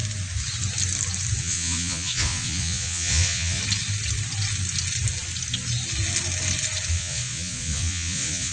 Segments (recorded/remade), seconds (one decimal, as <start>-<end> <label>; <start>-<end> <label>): 0.0-1.4 recorded; 1.4-3.6 remade; 3.6-6.9 recorded; 6.9-8.5 remade

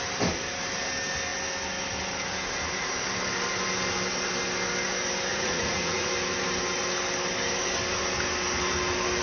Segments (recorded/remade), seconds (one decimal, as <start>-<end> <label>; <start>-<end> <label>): 0.0-5.3 recorded; 5.3-6.1 remade; 6.1-9.2 recorded

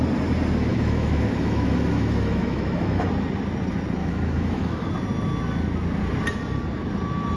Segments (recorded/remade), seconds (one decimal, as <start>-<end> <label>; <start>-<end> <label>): 0.0-0.7 recorded; 0.7-3.1 remade; 3.1-4.0 recorded; 4.0-4.9 remade; 4.9-7.4 recorded

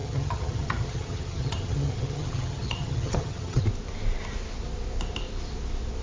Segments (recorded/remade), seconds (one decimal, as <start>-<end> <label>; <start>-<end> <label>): 0.0-3.6 remade; 3.6-6.0 recorded

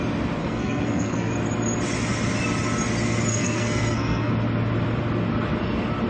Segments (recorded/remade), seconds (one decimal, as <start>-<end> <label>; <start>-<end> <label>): 0.0-0.4 recorded; 0.4-1.3 remade; 1.3-3.3 recorded; 3.3-4.3 remade; 4.3-6.1 recorded

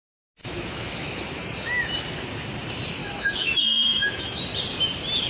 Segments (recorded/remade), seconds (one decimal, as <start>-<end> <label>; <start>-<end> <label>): 0.0-0.4 recorded; 0.4-2.0 remade; 2.0-3.0 recorded; 3.0-4.4 remade; 4.4-5.3 recorded